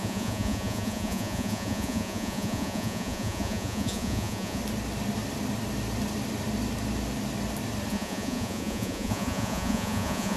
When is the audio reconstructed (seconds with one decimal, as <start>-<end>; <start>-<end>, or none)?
0.0-4.6; 7.9-10.4